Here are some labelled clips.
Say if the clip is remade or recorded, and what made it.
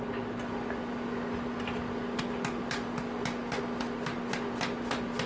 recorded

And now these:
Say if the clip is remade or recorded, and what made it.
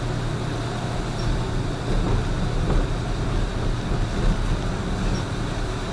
recorded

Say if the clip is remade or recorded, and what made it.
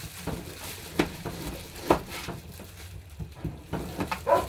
recorded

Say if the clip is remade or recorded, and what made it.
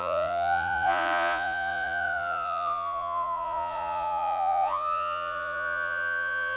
remade, vocoder, Vocos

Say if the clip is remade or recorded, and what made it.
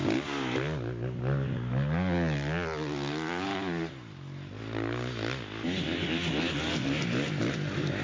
recorded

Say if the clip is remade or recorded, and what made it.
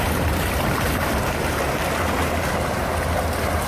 recorded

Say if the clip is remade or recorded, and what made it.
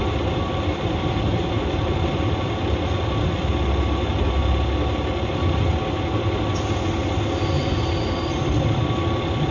recorded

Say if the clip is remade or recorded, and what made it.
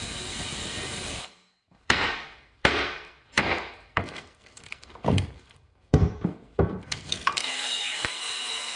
remade, codec, SNAC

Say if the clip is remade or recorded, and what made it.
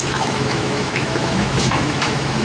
remade, autoencoder, DAC-VAE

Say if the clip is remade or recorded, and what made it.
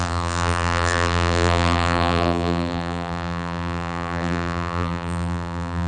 remade, vocoder, BigVGAN v2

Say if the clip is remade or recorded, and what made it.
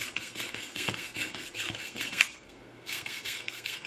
remade, codec, SNAC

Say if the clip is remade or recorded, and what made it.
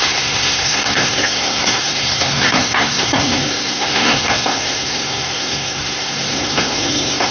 remade, codec, SNAC